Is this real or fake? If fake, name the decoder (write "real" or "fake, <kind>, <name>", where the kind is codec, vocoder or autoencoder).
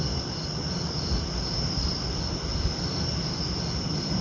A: real